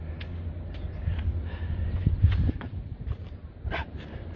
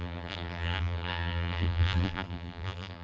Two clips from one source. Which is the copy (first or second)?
second